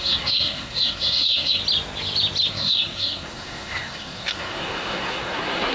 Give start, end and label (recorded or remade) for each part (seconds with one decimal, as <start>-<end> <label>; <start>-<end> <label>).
0.0-1.6 remade; 1.6-2.5 recorded; 2.5-5.7 remade